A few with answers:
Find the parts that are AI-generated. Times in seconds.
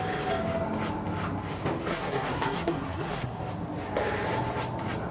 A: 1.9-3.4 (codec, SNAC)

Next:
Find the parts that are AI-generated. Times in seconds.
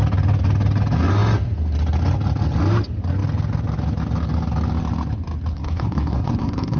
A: 5.5-6.8 (codec, SNAC)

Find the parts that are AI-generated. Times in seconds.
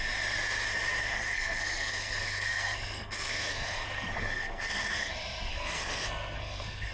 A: 1.0-5.1 (codec, SNAC); 5.5-6.9